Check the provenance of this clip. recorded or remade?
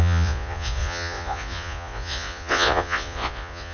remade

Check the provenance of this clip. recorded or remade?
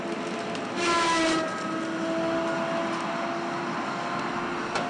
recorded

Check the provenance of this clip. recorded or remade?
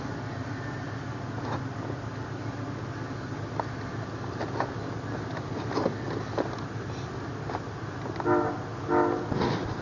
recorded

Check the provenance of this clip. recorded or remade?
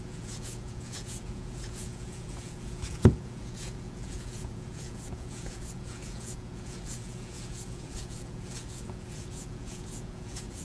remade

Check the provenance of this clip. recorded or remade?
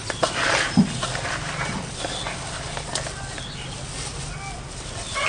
recorded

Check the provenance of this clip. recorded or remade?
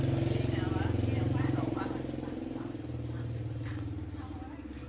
recorded